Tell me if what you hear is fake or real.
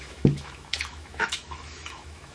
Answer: fake